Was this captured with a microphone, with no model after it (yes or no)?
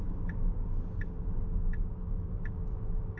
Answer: yes